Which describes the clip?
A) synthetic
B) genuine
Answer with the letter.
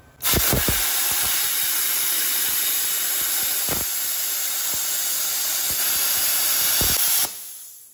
B